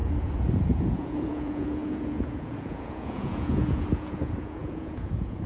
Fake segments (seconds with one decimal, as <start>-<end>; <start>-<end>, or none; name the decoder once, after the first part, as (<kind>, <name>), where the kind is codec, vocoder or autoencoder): 0.0-5.5 (vocoder, Vocos)